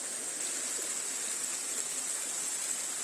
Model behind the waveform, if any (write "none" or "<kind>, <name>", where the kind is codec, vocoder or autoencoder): none